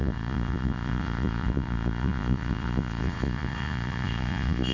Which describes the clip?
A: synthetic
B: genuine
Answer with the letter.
A